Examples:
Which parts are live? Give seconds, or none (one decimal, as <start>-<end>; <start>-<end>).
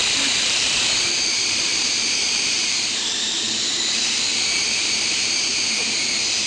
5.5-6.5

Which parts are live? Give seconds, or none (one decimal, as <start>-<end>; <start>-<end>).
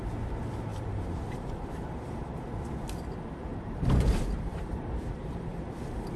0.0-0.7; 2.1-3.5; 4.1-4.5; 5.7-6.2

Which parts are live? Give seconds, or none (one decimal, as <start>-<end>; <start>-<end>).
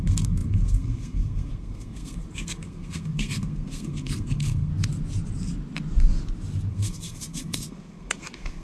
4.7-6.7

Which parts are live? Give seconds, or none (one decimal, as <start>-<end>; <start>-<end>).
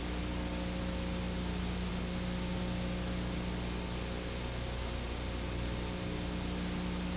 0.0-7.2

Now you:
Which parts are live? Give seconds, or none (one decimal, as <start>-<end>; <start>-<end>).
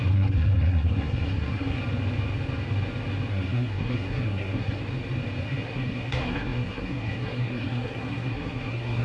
1.8-3.3; 4.8-5.4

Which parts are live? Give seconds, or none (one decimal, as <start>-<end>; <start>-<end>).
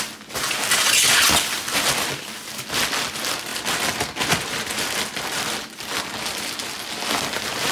0.0-7.7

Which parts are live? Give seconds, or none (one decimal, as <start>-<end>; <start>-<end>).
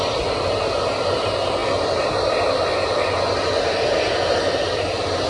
0.0-5.3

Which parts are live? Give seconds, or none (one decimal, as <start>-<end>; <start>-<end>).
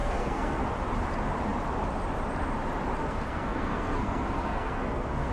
0.6-3.0